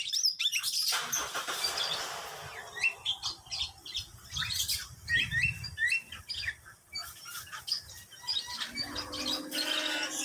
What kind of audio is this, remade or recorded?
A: recorded